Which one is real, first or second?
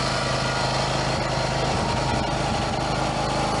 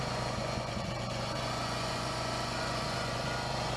first